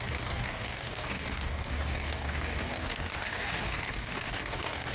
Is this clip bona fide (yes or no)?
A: no